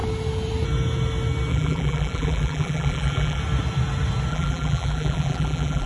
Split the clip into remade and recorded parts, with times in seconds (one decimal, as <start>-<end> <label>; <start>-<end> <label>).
0.0-1.5 recorded; 1.5-3.4 remade; 3.4-4.3 recorded; 4.3-5.9 remade